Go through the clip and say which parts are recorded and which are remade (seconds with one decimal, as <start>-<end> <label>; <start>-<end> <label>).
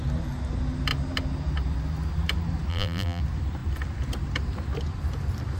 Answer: 0.0-2.7 recorded; 2.7-3.2 remade; 3.2-5.6 recorded